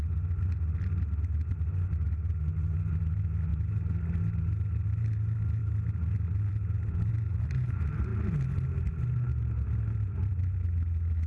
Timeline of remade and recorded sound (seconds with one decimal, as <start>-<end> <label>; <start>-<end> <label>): 0.0-11.3 recorded

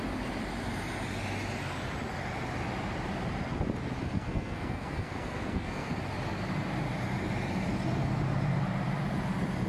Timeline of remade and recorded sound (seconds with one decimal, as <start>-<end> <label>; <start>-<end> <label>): 0.0-4.0 recorded; 4.0-5.9 remade; 5.9-9.7 recorded

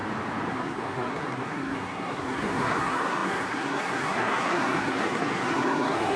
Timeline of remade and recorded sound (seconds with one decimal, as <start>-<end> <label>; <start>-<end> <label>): 0.0-0.5 recorded; 0.5-6.2 remade

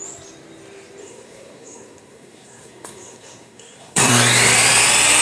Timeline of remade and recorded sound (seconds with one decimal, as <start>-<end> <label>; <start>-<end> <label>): 0.0-1.0 recorded; 1.0-4.1 remade; 4.1-5.2 recorded